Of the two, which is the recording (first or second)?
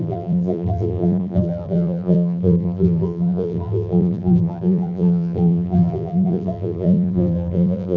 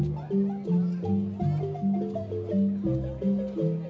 second